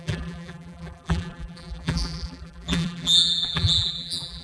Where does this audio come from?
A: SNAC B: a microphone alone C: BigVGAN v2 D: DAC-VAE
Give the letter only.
C